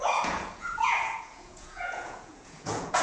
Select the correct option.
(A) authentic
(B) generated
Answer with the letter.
B